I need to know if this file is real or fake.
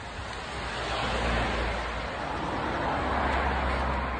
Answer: real